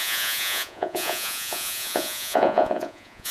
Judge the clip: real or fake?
fake